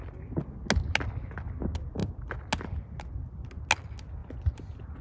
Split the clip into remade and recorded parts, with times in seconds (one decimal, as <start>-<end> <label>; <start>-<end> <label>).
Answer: 0.0-5.0 recorded